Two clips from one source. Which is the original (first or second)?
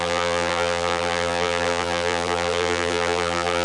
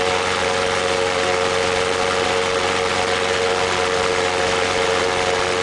second